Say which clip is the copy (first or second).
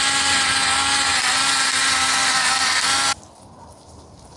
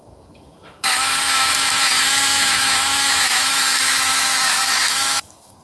second